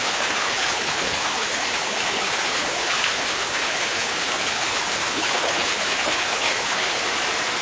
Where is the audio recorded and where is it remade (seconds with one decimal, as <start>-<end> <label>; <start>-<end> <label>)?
0.0-7.0 remade; 7.0-7.6 recorded